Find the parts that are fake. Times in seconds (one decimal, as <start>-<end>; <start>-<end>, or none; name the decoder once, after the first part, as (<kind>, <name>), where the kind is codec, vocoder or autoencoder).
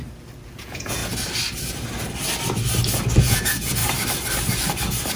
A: 0.6-1.0 (vocoder, Vocos); 3.2-3.8